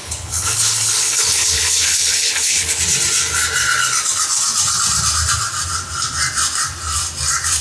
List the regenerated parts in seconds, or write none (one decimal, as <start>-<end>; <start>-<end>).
0.0-2.8